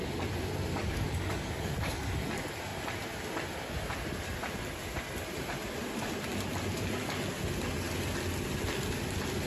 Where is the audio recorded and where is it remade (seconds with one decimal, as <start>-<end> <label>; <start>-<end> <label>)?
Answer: 0.0-0.7 recorded; 0.7-2.2 remade; 2.2-9.5 recorded